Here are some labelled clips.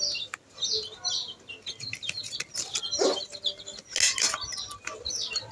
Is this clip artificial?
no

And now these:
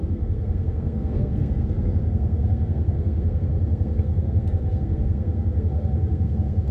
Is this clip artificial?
yes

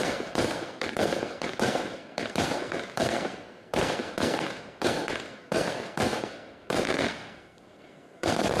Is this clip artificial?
yes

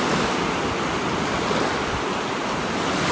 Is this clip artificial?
no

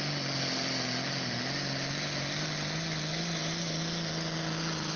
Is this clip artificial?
no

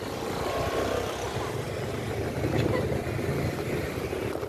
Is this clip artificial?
no